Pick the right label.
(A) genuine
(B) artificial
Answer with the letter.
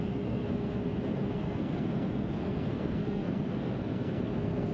B